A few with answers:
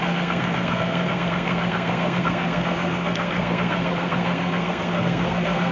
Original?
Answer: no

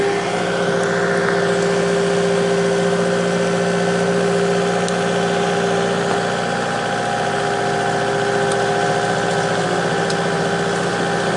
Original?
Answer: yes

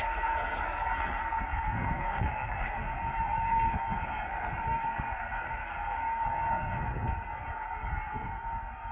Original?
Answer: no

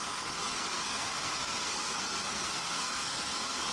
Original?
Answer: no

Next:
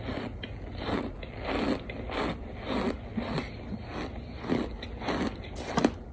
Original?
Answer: yes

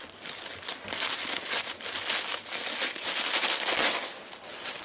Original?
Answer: yes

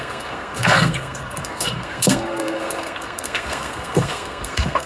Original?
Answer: no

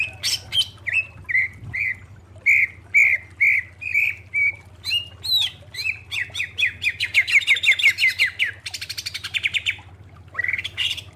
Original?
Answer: yes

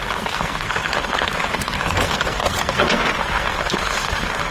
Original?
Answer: no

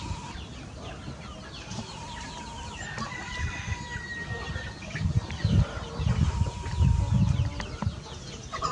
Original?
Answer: yes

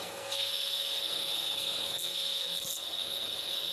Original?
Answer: no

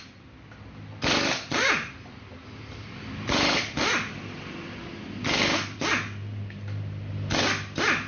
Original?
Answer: yes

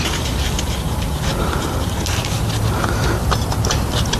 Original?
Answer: yes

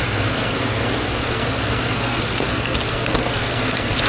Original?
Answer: no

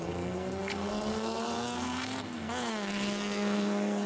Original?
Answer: no